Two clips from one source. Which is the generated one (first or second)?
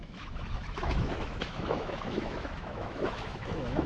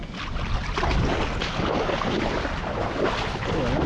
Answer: first